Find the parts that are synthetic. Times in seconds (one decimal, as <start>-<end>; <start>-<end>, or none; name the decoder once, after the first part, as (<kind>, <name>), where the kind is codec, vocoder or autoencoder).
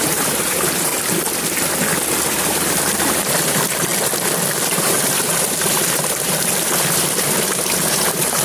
0.0-0.9 (vocoder, BigVGAN v2); 2.2-3.9; 4.7-8.4